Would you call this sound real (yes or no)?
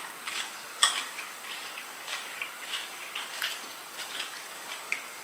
no